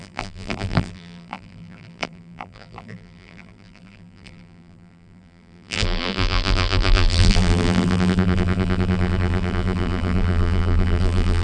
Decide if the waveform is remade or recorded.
remade